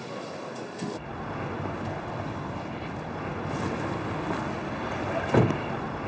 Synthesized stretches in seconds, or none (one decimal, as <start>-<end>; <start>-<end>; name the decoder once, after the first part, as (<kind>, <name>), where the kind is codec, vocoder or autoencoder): none